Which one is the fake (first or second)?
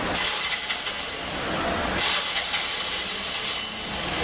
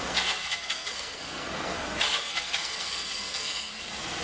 second